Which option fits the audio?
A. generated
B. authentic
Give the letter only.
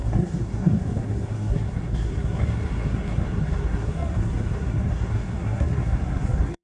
A